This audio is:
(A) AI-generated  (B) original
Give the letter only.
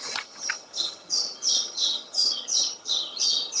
A